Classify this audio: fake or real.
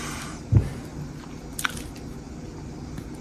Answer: real